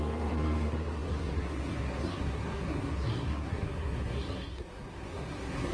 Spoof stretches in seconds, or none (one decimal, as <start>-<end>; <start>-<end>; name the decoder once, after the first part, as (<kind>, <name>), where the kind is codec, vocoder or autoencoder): 0.0-5.7 (codec, SNAC)